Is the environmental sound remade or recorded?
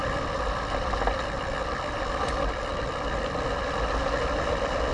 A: recorded